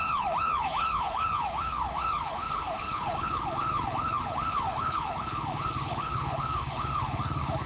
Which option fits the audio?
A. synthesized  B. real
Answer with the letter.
A